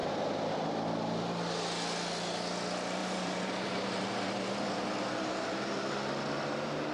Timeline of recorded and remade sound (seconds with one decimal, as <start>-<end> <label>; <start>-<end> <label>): 0.0-0.7 remade; 0.7-3.0 recorded; 3.0-5.9 remade; 5.9-6.9 recorded